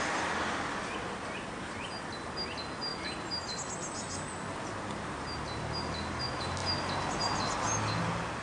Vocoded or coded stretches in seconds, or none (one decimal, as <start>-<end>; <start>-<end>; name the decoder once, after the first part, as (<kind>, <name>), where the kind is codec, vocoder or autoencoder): none